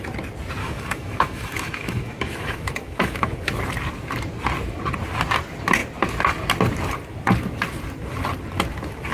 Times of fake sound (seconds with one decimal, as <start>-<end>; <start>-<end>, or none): 0.6-3.4

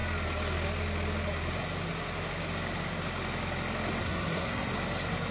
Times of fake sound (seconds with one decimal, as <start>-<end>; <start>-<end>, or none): 4.0-4.7

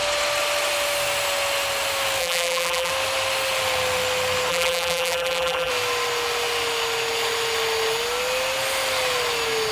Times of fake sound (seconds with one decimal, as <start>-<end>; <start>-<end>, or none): 2.2-2.9; 4.5-5.7

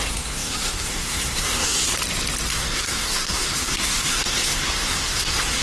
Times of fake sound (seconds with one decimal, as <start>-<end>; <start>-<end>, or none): 0.0-1.8; 2.5-5.6

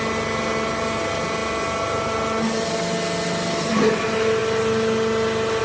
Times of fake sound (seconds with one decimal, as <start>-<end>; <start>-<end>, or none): none

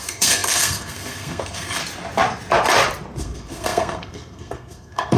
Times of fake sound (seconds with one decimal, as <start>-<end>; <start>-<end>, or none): 0.0-1.8; 3.2-5.2

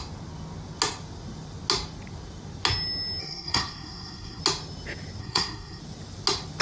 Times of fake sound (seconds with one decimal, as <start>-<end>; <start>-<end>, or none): 3.2-4.4; 5.2-5.8

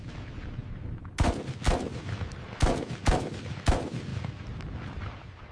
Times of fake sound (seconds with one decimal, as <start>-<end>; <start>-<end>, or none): none